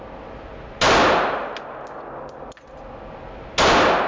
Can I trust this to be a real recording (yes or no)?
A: yes